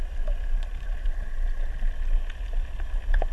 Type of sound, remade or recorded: recorded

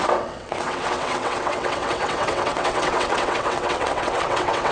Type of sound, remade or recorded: remade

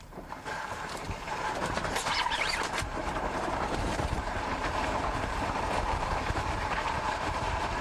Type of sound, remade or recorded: remade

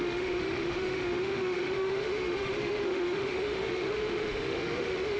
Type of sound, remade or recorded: remade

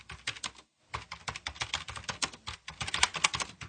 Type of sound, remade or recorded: recorded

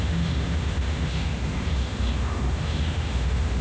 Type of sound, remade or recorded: remade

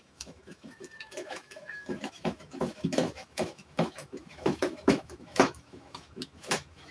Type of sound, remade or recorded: remade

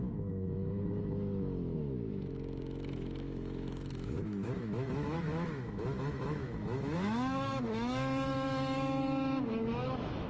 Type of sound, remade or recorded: remade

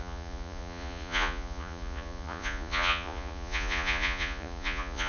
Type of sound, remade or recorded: remade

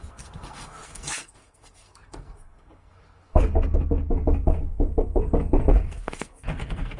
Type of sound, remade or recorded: remade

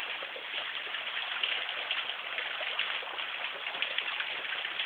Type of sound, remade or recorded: recorded